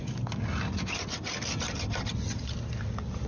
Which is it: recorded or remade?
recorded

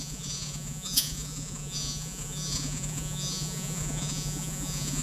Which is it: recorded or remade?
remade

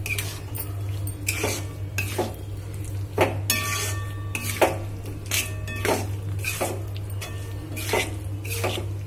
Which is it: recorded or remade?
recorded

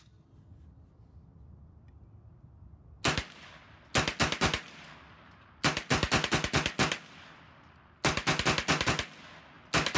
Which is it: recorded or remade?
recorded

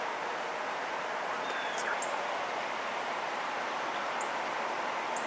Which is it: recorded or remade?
recorded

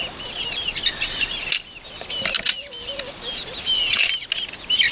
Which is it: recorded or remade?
recorded